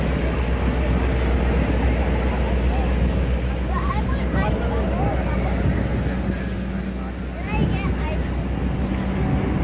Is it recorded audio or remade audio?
recorded